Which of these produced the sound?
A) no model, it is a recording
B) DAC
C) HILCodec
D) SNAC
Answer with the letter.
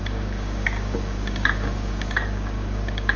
B